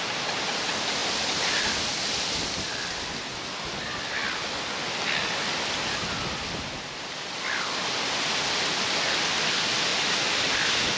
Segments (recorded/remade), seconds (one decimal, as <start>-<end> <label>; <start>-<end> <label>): 0.0-1.0 recorded; 1.0-1.5 remade; 1.5-9.9 recorded; 9.9-10.5 remade; 10.5-11.0 recorded